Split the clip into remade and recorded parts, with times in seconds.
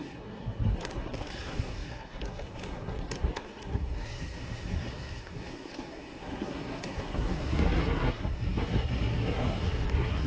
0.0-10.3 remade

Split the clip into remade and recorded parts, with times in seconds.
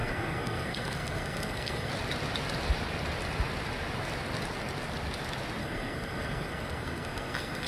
0.0-1.9 remade; 1.9-5.6 recorded; 5.6-7.7 remade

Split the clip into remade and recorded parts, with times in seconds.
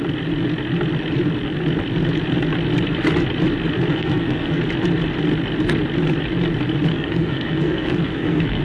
0.0-3.9 recorded; 3.9-4.6 remade; 4.6-6.9 recorded; 6.9-8.6 remade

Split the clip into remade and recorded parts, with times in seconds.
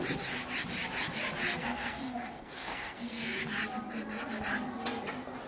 0.0-1.5 recorded; 1.5-3.4 remade; 3.4-5.5 recorded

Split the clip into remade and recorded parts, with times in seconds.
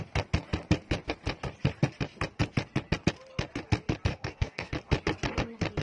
0.0-4.1 recorded; 4.1-4.7 remade; 4.7-5.8 recorded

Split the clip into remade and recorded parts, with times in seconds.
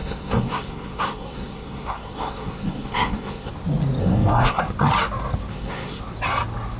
0.0-3.5 remade; 3.5-4.0 recorded; 4.0-4.6 remade; 4.6-5.5 recorded; 5.5-6.0 remade; 6.0-6.8 recorded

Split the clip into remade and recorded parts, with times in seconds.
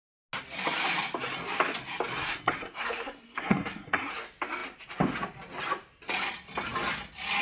0.0-2.2 recorded; 2.2-4.1 remade; 4.1-7.4 recorded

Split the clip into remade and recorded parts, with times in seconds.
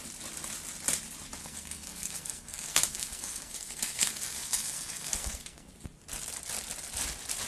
0.0-1.4 recorded; 1.4-5.7 remade; 5.7-7.5 recorded